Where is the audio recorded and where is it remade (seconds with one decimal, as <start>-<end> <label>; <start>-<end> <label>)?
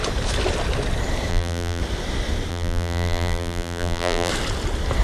0.0-1.3 recorded; 1.3-1.8 remade; 1.8-2.5 recorded; 2.5-4.3 remade; 4.3-5.0 recorded